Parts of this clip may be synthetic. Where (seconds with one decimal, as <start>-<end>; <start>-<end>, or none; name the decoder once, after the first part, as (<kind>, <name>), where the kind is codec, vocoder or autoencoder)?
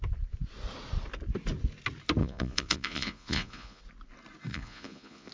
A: 2.2-3.8 (vocoder, Vocos); 4.5-5.3